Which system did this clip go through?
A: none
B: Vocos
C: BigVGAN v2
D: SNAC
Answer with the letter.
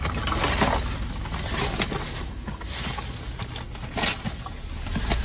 A